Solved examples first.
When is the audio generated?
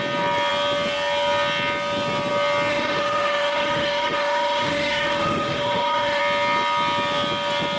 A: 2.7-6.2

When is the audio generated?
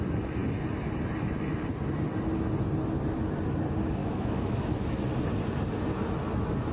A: 4.0-5.0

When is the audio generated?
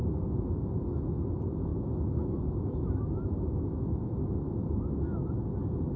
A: 0.0-0.6; 1.7-5.3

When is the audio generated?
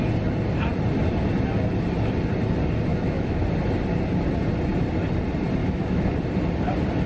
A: 2.9-3.4; 5.6-6.1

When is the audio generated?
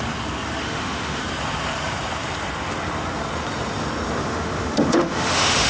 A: 0.6-1.2; 4.2-5.7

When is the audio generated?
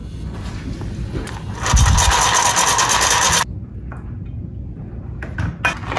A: none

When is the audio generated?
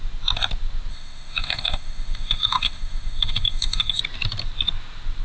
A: 0.9-4.0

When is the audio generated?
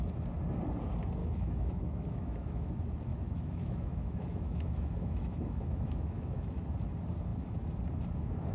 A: 1.2-2.7; 3.1-6.6